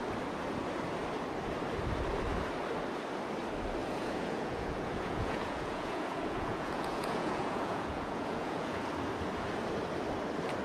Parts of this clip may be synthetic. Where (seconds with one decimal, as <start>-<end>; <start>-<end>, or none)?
3.8-8.8